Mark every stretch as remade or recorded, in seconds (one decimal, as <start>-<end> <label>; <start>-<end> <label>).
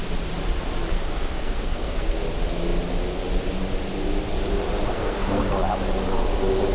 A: 0.0-0.9 recorded; 0.9-2.2 remade; 2.2-4.9 recorded; 4.9-5.6 remade; 5.6-6.7 recorded